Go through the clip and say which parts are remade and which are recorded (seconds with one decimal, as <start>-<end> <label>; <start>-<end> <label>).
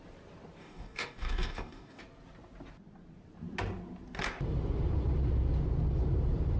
0.0-0.6 recorded; 0.6-2.0 remade; 2.0-6.6 recorded